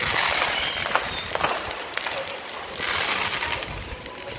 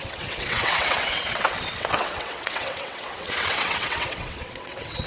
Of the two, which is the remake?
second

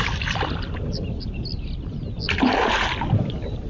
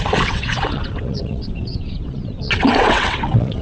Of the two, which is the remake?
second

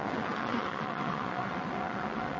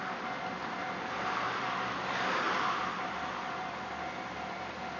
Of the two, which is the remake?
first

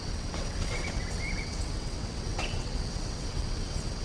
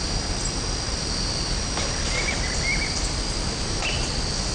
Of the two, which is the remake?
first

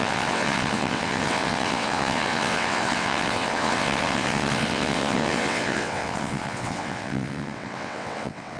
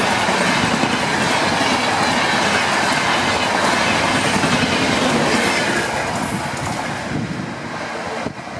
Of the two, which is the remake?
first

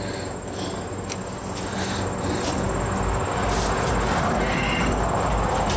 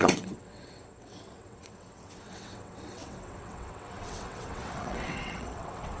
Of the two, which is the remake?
second